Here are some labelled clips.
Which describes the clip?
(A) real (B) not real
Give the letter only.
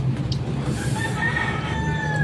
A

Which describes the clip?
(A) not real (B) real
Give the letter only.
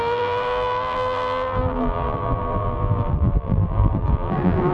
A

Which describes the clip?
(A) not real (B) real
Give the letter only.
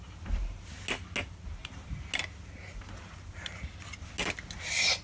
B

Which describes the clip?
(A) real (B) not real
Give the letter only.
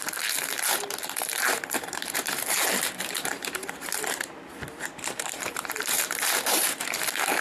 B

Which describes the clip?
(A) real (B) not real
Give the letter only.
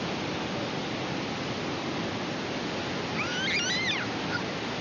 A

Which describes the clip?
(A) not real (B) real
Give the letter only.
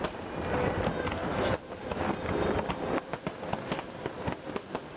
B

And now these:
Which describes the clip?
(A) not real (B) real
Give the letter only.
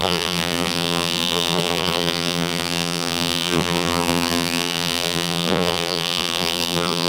A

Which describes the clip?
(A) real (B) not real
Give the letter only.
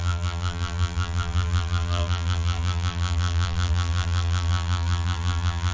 B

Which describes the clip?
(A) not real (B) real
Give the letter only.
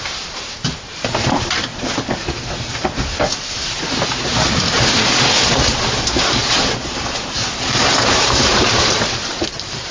A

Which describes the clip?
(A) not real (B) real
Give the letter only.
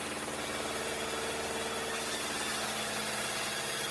B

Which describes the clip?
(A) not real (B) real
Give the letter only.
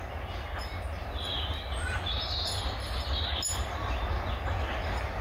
B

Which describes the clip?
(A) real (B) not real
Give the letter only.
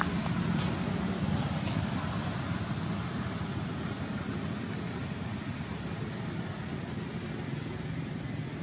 A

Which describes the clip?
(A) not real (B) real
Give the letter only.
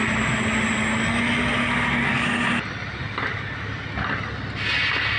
B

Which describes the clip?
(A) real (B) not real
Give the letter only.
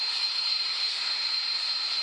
B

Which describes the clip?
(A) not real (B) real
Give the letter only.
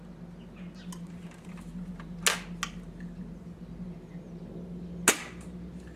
B